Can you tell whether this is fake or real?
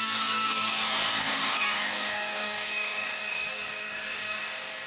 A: fake